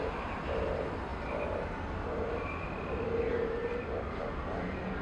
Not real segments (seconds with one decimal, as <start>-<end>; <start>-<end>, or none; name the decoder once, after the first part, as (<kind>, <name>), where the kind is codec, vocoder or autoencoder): none